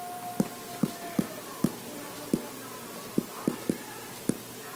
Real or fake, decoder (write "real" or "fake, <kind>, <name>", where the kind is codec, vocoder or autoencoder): real